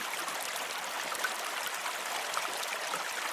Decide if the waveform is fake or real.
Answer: real